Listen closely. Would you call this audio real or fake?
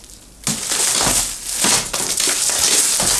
real